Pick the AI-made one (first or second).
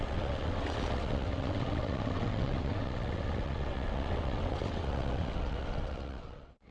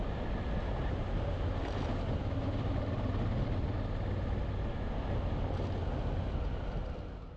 first